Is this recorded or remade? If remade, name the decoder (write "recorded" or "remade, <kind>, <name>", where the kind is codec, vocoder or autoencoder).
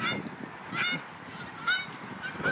recorded